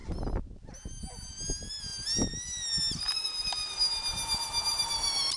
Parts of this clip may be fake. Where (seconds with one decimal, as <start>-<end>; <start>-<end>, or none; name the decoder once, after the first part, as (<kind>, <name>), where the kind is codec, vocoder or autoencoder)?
none